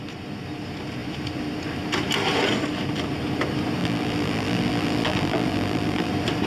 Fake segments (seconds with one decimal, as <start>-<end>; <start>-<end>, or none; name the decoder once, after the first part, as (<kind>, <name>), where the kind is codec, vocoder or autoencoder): 3.8-6.1 (vocoder, BigVGAN v2)